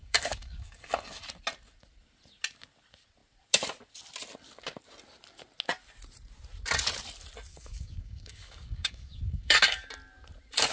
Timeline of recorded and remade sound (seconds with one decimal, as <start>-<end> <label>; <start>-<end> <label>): 0.0-1.2 remade; 1.2-7.5 recorded; 7.5-9.9 remade; 9.9-10.7 recorded